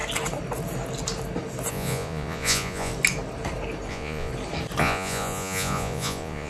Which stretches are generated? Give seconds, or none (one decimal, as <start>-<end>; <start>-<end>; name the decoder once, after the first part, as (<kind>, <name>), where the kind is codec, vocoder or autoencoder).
1.7-2.9 (vocoder, Vocos); 3.9-4.3; 4.8-6.5

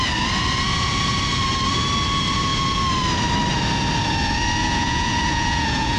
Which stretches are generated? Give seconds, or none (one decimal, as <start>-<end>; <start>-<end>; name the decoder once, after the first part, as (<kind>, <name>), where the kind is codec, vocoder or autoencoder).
4.6-6.0 (vocoder, Vocos)

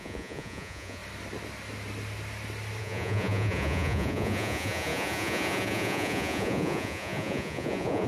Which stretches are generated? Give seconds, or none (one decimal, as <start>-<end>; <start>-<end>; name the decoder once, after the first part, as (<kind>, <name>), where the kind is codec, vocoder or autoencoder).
0.0-1.0 (vocoder, Vocos); 2.8-8.1

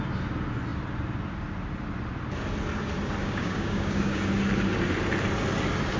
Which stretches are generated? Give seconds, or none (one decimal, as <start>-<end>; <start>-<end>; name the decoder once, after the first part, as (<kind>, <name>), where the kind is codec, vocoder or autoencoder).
3.2-4.2 (codec, DAC)

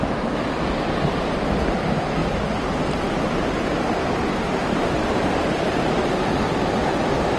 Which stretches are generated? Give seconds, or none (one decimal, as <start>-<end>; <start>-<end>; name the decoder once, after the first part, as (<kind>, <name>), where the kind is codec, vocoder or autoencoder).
2.2-6.6 (vocoder, BigVGAN v2)

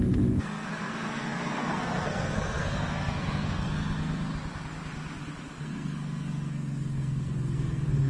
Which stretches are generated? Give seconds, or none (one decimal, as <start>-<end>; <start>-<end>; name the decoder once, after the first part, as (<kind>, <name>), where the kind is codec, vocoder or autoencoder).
0.0-4.3 (codec, SNAC); 5.6-8.1